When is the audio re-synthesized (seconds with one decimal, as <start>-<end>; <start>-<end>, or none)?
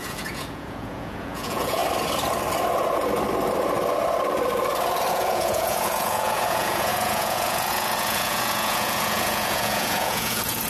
0.0-1.8; 5.1-10.7